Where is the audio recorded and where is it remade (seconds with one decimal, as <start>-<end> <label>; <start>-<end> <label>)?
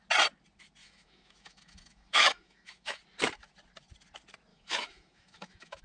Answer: 0.0-0.8 recorded; 0.8-3.0 remade; 3.0-4.5 recorded; 4.5-5.8 remade